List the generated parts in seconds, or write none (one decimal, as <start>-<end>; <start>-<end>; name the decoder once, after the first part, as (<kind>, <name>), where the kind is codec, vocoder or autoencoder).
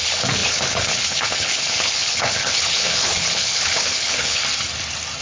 0.0-4.4 (codec, HILCodec)